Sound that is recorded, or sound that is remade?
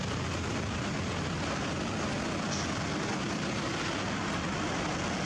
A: recorded